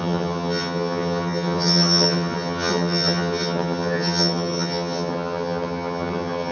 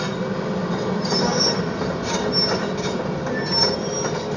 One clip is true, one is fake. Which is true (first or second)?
second